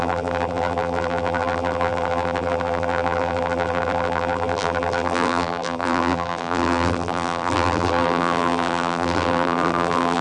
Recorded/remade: remade